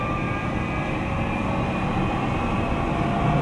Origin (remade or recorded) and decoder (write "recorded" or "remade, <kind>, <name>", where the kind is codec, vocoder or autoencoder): recorded